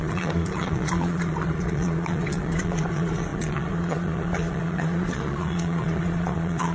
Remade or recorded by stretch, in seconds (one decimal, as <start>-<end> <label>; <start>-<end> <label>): 0.0-6.7 remade